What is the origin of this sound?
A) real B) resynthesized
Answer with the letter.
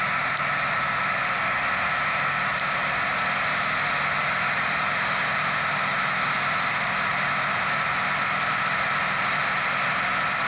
A